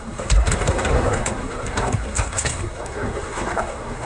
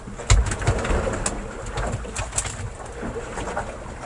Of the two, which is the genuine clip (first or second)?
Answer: second